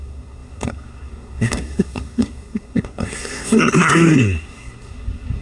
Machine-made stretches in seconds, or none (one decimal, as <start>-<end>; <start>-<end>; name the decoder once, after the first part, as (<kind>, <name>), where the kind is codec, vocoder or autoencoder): 0.0-5.4 (codec, SNAC)